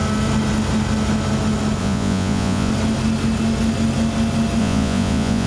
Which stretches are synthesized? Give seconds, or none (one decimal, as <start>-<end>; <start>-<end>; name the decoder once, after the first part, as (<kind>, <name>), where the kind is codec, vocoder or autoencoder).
1.8-2.7 (vocoder, Vocos); 4.6-5.5